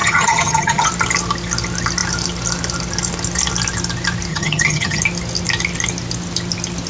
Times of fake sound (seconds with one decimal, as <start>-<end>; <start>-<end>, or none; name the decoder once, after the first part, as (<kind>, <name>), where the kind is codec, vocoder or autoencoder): 0.0-0.9 (vocoder, HiFi-GAN); 4.3-5.0